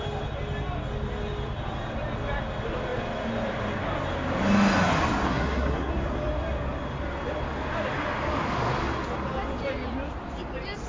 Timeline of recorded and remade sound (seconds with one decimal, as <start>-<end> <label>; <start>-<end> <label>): 0.0-5.3 recorded; 5.3-5.9 remade; 5.9-10.9 recorded